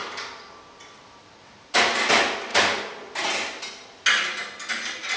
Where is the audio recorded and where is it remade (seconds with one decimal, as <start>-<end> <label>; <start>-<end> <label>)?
0.0-5.2 recorded